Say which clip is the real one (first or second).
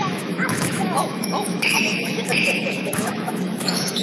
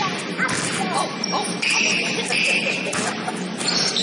second